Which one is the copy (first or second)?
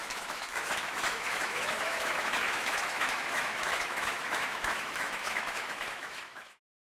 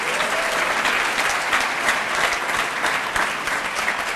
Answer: first